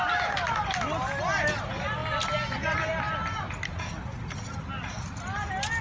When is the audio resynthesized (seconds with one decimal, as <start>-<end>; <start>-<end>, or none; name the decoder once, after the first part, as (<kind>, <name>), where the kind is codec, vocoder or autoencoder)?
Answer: none